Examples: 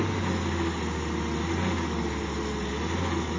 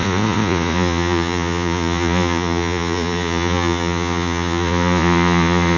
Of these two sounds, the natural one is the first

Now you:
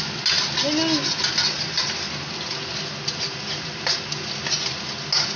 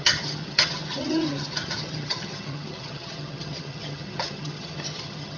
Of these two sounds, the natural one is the first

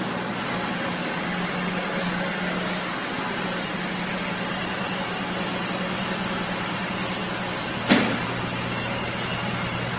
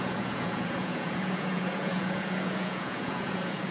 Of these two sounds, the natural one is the first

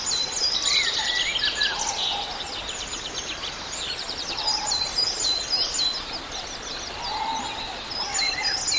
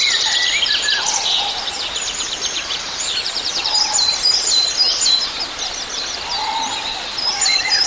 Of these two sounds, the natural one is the first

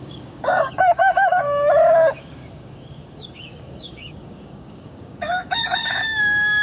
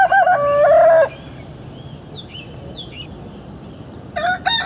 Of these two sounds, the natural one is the second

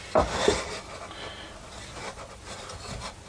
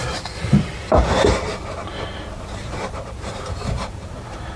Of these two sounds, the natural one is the first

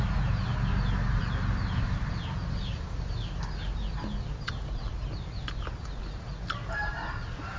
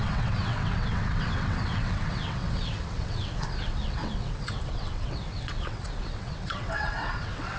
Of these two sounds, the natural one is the first